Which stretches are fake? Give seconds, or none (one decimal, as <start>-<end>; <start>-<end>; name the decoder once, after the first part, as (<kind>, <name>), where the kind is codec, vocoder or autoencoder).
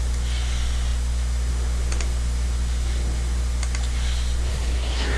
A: 4.5-5.2 (codec, SNAC)